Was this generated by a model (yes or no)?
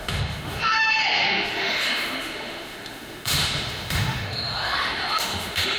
yes